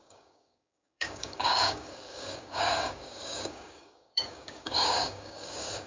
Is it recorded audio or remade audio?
remade